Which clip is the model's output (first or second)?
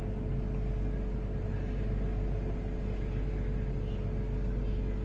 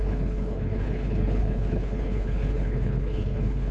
second